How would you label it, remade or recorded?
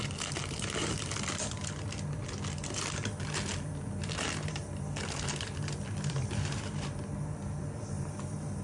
remade